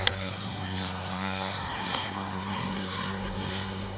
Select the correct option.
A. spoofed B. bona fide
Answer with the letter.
A